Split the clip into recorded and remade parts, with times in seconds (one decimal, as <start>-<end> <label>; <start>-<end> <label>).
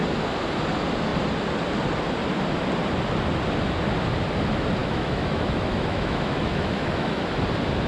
0.0-4.8 recorded; 4.8-7.3 remade; 7.3-7.9 recorded